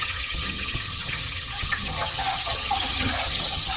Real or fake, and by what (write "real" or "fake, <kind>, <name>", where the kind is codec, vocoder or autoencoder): fake, vocoder, HiFi-GAN